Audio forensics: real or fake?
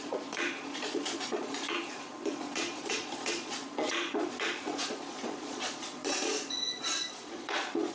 fake